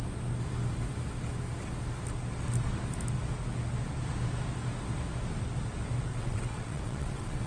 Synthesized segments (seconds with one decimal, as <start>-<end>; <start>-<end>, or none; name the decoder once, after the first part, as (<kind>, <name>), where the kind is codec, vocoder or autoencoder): 6.1-7.5 (vocoder, WaveNeXt)